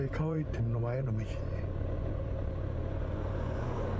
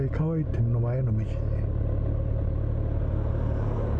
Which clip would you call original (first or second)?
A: second